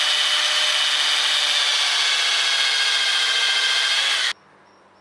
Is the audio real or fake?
real